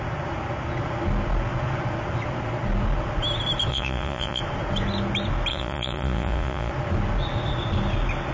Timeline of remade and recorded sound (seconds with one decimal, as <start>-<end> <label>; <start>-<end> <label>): 0.0-3.7 recorded; 3.7-4.4 remade; 4.4-5.5 recorded; 5.5-6.7 remade; 6.7-8.3 recorded